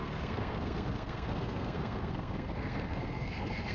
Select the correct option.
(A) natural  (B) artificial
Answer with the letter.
B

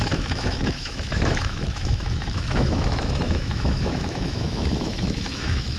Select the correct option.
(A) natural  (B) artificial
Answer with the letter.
B